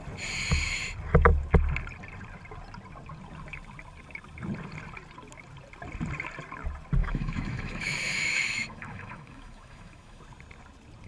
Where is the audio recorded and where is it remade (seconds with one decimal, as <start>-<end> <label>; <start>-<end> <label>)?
0.0-7.0 recorded; 7.0-10.2 remade; 10.2-11.1 recorded